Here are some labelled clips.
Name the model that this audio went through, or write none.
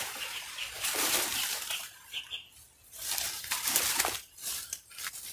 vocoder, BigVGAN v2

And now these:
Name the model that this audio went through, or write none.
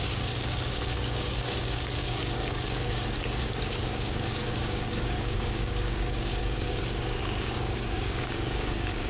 codec, DAC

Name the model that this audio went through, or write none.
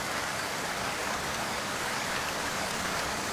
codec, DAC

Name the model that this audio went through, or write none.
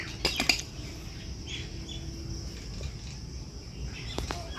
none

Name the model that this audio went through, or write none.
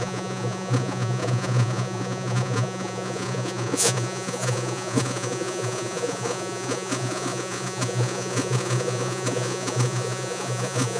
vocoder, Vocos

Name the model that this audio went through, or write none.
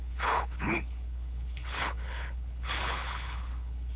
codec, HILCodec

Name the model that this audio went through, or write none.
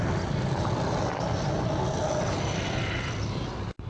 none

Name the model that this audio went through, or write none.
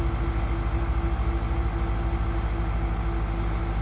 none